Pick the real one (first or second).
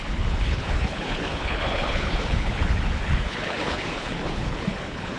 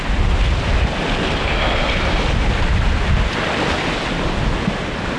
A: second